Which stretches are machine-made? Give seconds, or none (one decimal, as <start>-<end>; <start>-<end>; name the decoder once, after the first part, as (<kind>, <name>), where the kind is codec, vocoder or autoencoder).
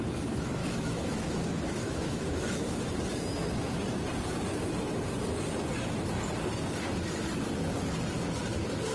0.6-2.8 (autoencoder, DAC-VAE)